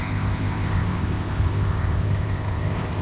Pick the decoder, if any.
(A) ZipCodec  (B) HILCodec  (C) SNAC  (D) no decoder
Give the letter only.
A